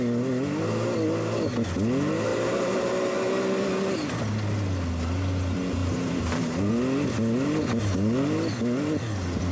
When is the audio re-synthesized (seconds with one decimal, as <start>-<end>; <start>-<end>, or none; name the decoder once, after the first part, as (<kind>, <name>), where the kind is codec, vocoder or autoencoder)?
2.3-2.9 (vocoder, BigVGAN v2); 5.8-6.7